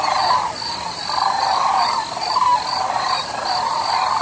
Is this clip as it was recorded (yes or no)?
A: no